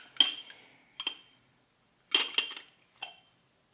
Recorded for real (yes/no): yes